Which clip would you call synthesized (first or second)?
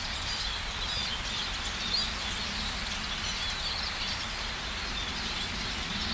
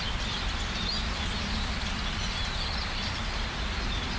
second